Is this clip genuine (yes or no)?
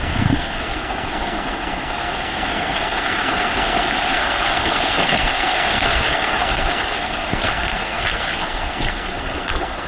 no